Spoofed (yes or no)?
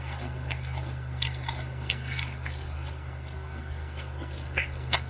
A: yes